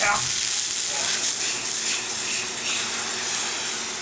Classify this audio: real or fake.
real